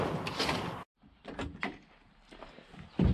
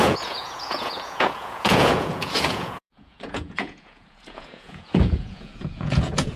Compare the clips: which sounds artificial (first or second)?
second